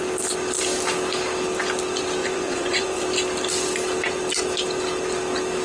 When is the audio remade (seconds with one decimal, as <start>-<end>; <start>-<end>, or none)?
2.2-3.0